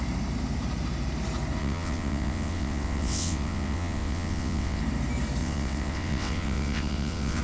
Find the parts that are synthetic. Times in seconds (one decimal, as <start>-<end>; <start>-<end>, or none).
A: 1.6-4.8; 5.4-7.4